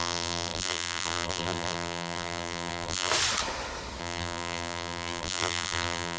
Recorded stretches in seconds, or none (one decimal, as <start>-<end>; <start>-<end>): 3.1-4.0